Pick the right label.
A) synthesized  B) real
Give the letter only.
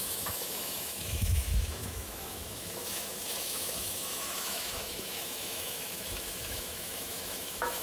A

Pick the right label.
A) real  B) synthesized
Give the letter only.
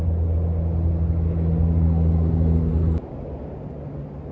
A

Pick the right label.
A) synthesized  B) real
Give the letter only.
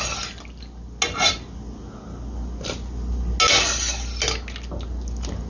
B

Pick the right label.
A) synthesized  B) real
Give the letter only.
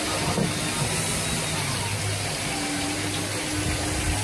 B